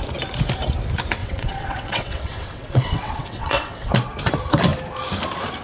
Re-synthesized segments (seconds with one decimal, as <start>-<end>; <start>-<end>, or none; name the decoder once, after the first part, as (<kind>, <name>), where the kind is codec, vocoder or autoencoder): 1.2-3.9 (vocoder, WaveNeXt)